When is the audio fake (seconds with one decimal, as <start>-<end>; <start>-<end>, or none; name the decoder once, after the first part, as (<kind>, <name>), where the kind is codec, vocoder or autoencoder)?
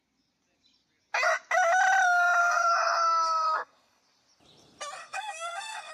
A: 2.4-4.0 (codec, SNAC); 5.0-5.9